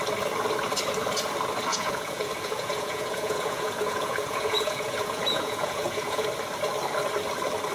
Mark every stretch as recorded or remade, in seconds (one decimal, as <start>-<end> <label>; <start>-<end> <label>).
0.0-1.7 recorded; 1.7-6.3 remade; 6.3-7.7 recorded